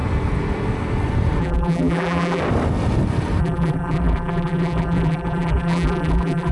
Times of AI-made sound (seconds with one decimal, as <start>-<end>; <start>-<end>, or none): 1.4-2.4; 3.4-6.5

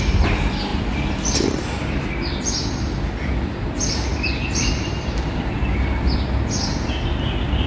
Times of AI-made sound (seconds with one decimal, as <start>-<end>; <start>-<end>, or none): 4.4-5.3

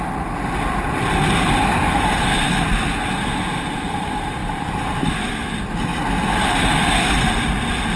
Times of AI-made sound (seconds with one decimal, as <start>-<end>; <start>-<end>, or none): 4.4-5.3; 5.9-6.8

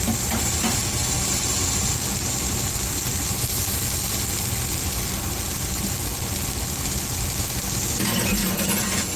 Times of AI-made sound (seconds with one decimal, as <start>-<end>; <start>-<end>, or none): 8.4-9.2

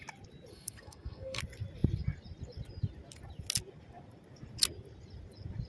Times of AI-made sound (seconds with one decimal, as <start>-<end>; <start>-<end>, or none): 0.5-1.4

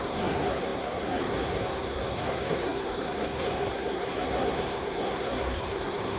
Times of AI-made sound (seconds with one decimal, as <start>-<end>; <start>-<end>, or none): 0.0-6.2

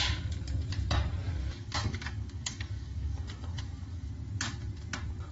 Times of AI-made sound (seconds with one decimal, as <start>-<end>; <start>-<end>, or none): 1.4-4.1

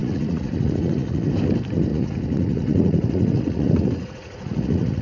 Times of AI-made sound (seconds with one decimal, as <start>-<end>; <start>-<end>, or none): 0.0-1.3; 1.9-5.0